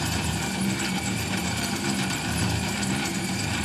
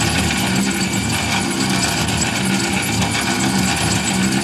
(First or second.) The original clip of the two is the second